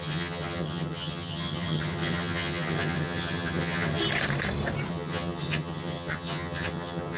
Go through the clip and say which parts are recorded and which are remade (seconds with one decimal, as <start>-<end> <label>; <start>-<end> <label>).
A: 0.0-4.0 remade; 4.0-4.9 recorded; 4.9-7.2 remade